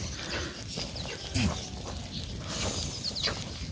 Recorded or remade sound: recorded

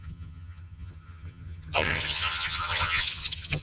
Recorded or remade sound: remade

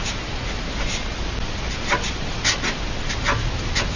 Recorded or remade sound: recorded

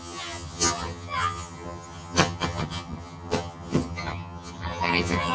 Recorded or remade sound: remade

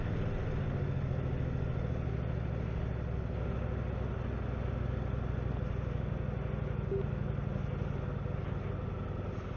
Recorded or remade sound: recorded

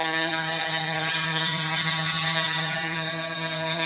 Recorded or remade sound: remade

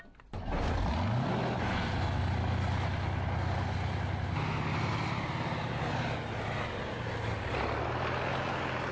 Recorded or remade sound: recorded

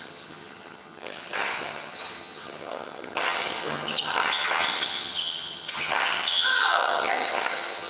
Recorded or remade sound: remade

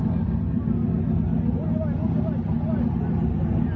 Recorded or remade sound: recorded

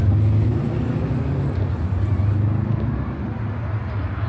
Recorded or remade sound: recorded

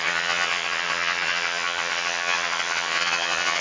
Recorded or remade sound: remade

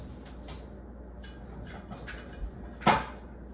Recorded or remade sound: recorded